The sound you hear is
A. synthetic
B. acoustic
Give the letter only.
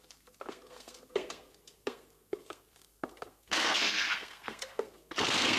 A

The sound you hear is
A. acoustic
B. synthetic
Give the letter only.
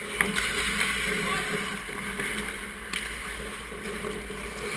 A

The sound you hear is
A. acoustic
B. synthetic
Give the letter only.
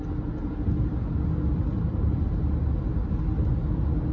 A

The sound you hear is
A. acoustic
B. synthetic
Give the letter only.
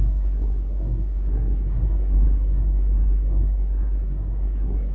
B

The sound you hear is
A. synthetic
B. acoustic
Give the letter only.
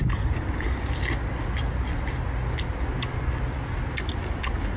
B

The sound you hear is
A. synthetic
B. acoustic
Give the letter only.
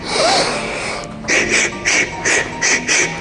B